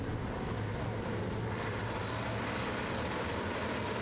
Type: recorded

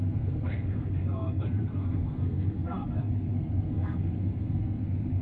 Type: remade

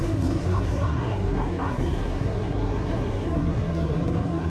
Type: remade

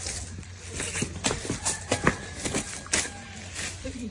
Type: recorded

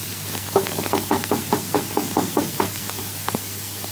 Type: remade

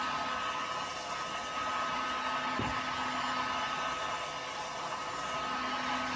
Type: recorded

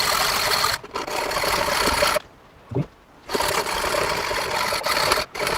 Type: recorded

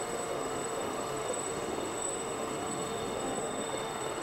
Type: remade